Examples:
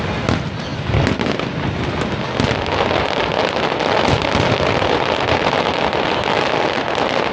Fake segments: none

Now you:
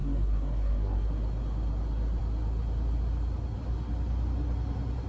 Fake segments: 0.0-1.1 (codec, SNAC)